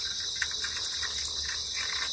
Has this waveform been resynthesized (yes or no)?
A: no